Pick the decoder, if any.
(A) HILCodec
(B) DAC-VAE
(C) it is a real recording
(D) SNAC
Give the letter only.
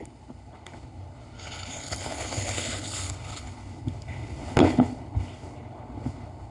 A